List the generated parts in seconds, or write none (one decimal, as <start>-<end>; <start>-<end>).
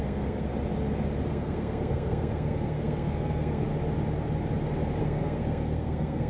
0.0-0.5; 1.3-3.7; 5.0-6.3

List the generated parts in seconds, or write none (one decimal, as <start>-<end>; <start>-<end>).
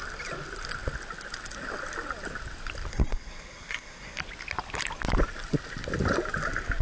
2.9-4.2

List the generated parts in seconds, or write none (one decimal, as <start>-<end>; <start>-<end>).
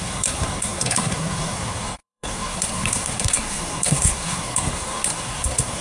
0.0-5.8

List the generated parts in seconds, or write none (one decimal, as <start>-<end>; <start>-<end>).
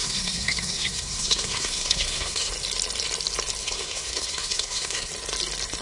0.0-2.5; 3.6-5.1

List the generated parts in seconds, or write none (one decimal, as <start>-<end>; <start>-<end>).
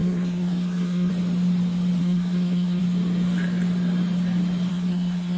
0.0-1.1; 2.0-2.8; 4.7-5.4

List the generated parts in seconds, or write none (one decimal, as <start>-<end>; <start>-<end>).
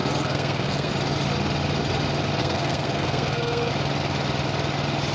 0.0-0.9; 2.4-3.7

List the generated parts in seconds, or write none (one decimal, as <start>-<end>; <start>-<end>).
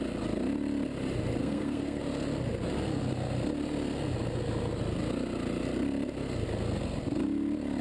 1.4-2.0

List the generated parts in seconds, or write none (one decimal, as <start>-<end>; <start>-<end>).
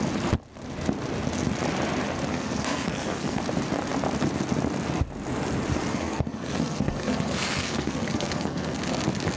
2.3-3.4; 5.9-8.8